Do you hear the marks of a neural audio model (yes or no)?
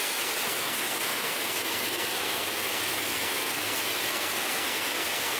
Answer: yes